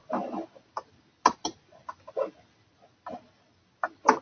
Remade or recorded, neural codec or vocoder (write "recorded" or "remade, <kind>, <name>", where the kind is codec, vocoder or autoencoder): recorded